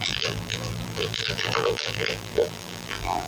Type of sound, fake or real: fake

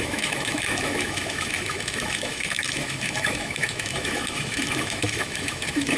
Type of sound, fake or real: fake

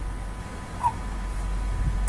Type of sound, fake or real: real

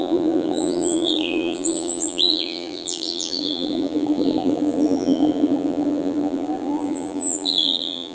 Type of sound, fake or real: fake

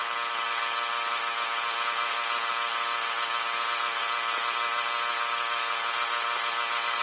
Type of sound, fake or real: real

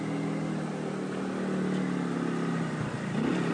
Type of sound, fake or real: real